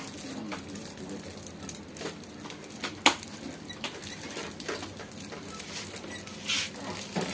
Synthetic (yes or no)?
no